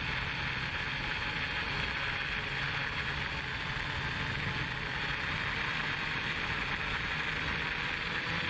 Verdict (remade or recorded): recorded